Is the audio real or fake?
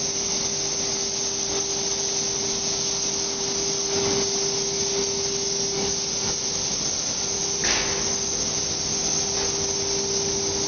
real